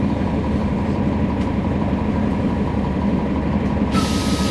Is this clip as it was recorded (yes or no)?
yes